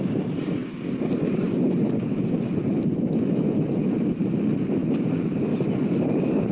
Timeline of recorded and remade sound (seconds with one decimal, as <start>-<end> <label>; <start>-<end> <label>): 0.0-6.5 recorded